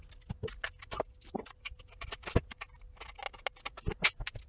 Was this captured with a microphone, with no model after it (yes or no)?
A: yes